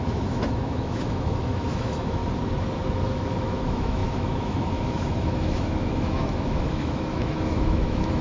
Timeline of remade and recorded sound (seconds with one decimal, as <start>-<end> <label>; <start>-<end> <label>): 0.0-2.2 remade; 2.2-3.0 recorded; 3.0-8.2 remade